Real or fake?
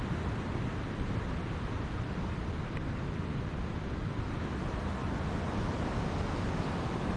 real